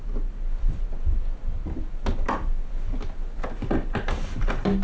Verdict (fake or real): real